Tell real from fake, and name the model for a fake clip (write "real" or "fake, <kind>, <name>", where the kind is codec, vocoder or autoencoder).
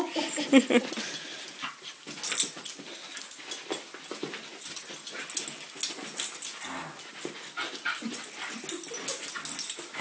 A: real